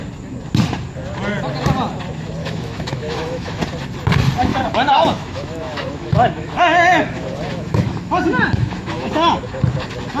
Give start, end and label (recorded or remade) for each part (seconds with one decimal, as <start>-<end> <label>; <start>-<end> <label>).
0.0-2.4 recorded; 2.4-3.6 remade; 3.6-4.5 recorded; 4.5-9.4 remade; 9.4-10.2 recorded